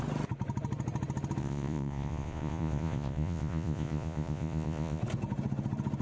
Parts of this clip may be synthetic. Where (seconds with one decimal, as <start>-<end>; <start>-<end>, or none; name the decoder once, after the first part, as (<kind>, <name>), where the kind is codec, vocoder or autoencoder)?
1.4-5.0 (vocoder, Vocos)